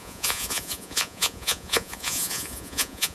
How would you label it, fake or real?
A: fake